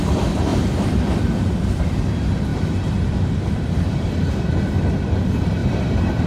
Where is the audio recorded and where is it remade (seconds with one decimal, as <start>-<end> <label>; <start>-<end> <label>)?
0.0-0.5 recorded; 0.5-1.2 remade; 1.2-2.5 recorded; 2.5-4.3 remade; 4.3-5.6 recorded; 5.6-6.3 remade